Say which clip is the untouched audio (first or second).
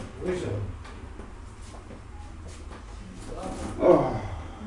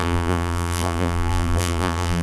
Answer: first